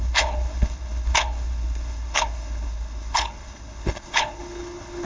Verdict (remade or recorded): remade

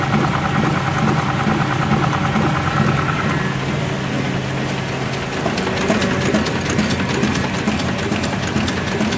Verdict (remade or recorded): recorded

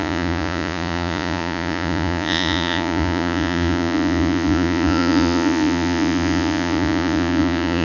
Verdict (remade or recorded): remade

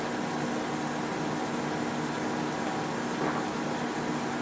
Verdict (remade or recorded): recorded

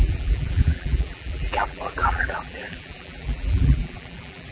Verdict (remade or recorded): remade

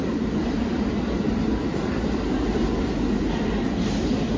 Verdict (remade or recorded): recorded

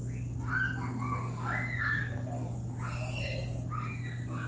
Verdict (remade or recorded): recorded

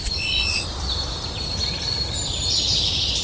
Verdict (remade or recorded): recorded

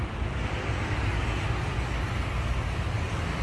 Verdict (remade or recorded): recorded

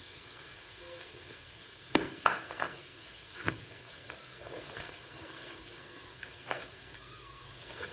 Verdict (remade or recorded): remade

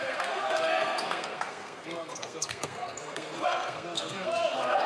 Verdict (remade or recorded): remade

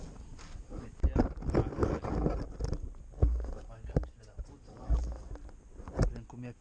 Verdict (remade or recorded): recorded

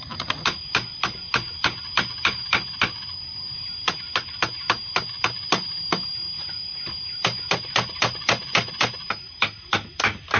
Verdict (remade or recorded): recorded